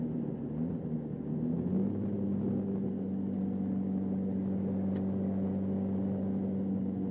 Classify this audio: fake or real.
real